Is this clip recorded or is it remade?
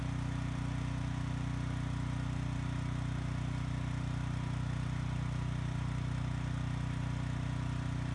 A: recorded